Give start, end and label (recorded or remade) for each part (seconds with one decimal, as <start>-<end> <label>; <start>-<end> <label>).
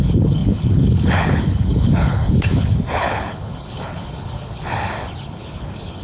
0.0-6.0 remade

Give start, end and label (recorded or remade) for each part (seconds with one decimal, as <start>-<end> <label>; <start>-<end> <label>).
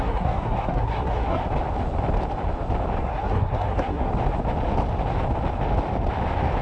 0.0-1.4 remade; 1.4-3.0 recorded; 3.0-4.1 remade; 4.1-6.6 recorded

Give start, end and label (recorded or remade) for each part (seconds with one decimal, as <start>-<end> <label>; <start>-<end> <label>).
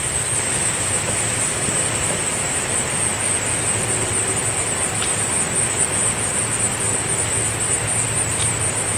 0.0-9.0 recorded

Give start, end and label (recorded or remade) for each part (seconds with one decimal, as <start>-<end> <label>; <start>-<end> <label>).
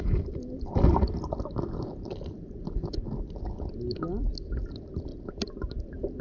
0.0-1.9 recorded; 1.9-3.4 remade; 3.4-5.1 recorded; 5.1-6.2 remade